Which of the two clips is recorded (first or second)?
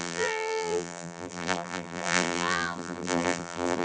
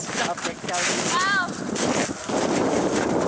second